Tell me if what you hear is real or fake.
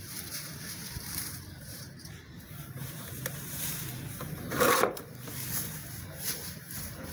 fake